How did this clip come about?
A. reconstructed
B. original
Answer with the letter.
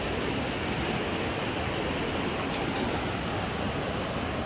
B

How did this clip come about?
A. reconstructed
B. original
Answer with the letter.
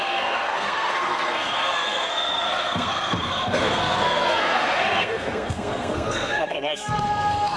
A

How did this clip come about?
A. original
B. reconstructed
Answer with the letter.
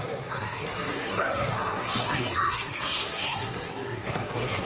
B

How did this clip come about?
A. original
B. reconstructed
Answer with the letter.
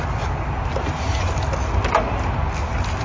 A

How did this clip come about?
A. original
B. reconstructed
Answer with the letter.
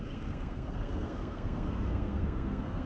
B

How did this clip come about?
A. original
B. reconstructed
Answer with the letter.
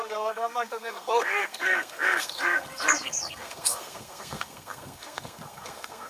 B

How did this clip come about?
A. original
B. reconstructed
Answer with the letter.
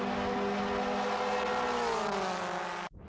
A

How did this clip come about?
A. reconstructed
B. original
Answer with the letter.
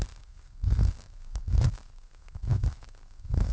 A